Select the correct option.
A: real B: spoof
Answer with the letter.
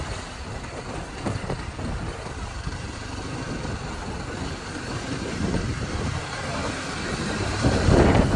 B